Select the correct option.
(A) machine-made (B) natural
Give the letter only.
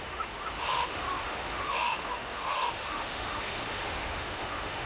A